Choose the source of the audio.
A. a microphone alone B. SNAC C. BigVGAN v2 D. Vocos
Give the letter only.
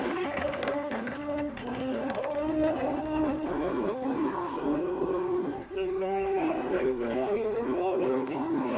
B